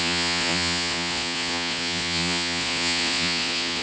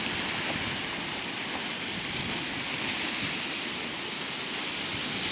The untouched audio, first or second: second